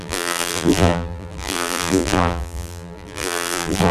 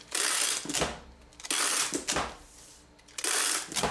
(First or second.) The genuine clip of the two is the second